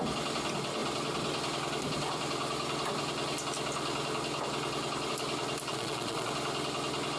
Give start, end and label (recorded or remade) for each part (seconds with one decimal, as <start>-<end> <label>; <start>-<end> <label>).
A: 0.0-5.7 recorded; 5.7-6.3 remade; 6.3-7.2 recorded

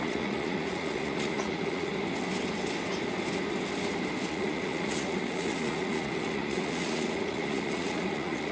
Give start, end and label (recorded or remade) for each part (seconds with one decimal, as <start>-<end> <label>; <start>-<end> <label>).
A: 0.0-1.9 remade; 1.9-4.3 recorded; 4.3-8.5 remade